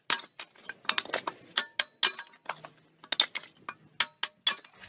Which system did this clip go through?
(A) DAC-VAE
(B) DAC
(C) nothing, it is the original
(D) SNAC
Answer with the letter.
C